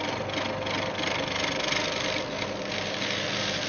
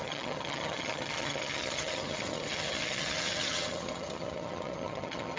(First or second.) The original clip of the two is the first